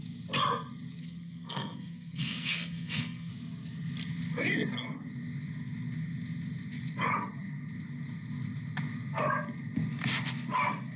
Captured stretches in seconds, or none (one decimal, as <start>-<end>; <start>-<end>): 0.0-1.0; 3.3-11.0